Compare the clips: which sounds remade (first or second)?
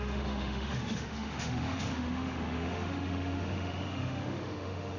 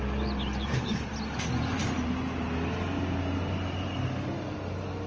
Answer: first